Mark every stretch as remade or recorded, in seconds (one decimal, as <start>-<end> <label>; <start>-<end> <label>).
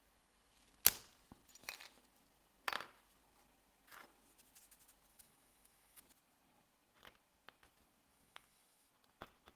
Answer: 0.0-5.1 recorded; 5.1-6.0 remade; 6.0-8.1 recorded; 8.1-8.9 remade; 8.9-9.6 recorded